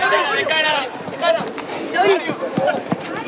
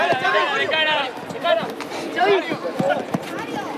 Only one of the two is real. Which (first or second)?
second